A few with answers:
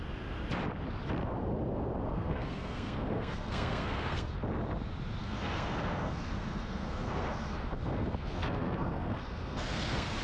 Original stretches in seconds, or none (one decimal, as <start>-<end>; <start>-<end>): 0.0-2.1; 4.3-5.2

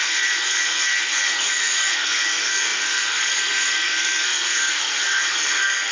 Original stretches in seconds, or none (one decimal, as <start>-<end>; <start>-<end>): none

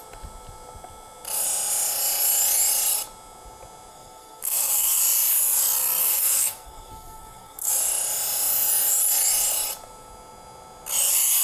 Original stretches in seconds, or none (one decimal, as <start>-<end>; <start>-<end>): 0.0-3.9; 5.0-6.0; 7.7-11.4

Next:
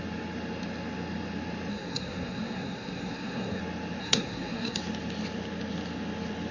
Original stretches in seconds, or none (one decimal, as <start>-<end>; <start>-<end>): 0.0-1.7; 3.6-4.0; 4.8-6.5